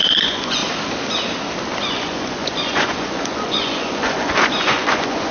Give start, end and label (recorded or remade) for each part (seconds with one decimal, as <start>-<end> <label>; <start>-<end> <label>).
0.0-0.6 remade; 0.6-1.9 recorded; 1.9-5.3 remade